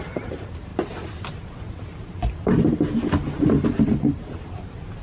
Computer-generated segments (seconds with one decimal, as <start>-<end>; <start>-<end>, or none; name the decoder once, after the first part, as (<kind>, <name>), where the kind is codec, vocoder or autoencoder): 0.0-0.7 (vocoder, BigVGAN v2); 2.0-5.0